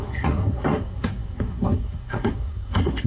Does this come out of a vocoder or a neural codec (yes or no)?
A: yes